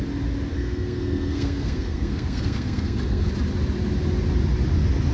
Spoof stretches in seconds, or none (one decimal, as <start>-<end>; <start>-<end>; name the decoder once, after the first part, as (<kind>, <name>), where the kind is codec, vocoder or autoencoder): 0.5-3.3 (codec, SNAC)